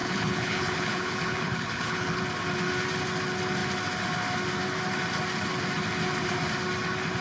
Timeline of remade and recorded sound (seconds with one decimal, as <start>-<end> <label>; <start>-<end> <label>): 0.0-2.2 remade; 2.2-7.2 recorded